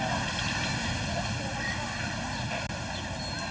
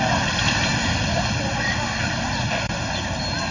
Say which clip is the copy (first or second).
second